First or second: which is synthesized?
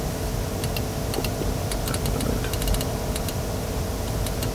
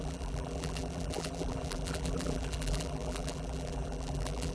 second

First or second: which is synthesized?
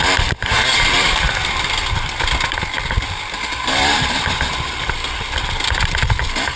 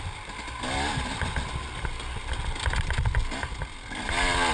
first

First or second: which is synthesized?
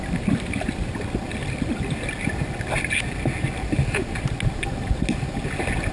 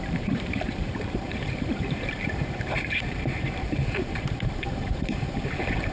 second